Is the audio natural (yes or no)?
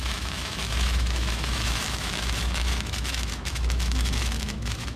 no